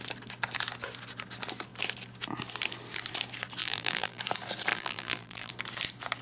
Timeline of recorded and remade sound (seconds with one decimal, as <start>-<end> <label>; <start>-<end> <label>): 0.0-3.6 recorded; 3.6-4.2 remade; 4.2-4.7 recorded; 4.7-5.5 remade; 5.5-6.2 recorded